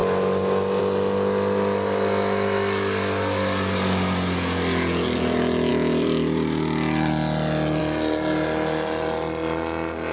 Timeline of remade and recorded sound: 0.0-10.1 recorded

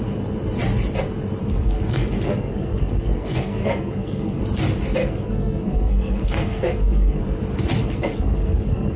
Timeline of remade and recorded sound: 0.0-1.4 recorded; 1.4-4.4 remade; 4.4-5.0 recorded; 5.0-7.2 remade; 7.2-7.8 recorded; 7.8-9.0 remade

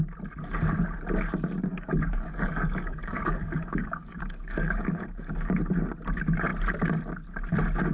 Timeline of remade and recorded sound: 0.0-1.7 recorded; 1.7-5.6 remade; 5.6-7.9 recorded

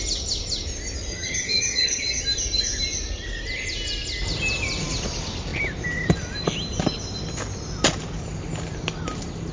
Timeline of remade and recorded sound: 0.0-1.1 recorded; 1.1-2.2 remade; 2.2-9.5 recorded

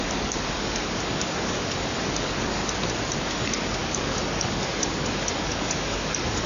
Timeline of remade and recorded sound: 0.0-2.6 remade; 2.6-3.2 recorded; 3.2-6.5 remade